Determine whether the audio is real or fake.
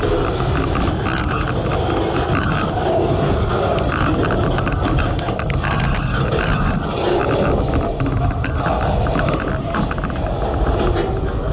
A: real